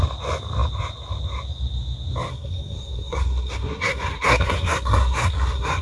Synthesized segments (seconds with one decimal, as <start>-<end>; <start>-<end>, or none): 2.3-5.8